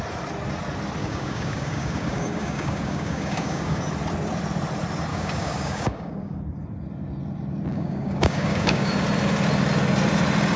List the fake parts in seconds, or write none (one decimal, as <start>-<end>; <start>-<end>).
1.0-3.8; 5.1-6.4; 7.7-8.9